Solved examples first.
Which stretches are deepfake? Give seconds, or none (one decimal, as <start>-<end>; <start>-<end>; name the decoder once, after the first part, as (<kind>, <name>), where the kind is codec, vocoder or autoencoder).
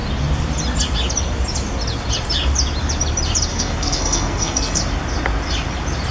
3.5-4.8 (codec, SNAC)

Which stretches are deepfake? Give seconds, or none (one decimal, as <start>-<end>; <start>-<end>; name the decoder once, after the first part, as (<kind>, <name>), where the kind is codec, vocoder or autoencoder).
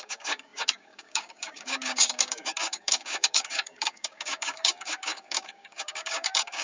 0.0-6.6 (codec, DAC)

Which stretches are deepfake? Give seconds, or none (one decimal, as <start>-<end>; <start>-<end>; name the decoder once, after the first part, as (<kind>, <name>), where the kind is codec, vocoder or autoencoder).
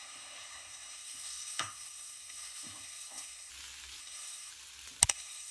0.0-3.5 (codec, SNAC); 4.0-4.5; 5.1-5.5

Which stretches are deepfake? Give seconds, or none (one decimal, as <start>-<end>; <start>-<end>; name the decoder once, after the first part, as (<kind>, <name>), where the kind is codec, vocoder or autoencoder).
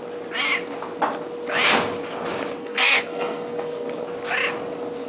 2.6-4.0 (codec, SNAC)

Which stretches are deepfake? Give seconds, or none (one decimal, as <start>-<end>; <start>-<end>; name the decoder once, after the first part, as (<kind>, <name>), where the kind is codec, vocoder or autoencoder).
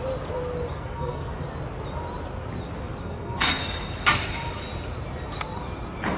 0.7-1.3 (codec, SNAC); 3.0-3.6